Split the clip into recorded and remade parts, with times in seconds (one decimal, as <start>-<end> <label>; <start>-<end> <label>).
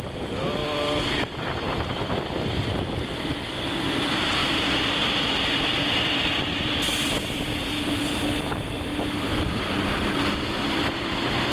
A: 0.0-0.6 recorded; 0.6-3.1 remade; 3.1-11.5 recorded